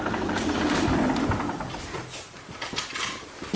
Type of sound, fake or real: real